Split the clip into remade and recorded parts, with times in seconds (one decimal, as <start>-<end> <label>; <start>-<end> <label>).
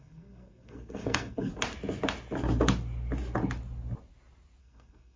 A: 0.0-1.5 remade; 1.5-4.6 recorded; 4.6-5.2 remade